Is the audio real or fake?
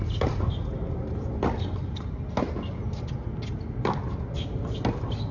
real